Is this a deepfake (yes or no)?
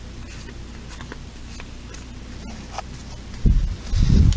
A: no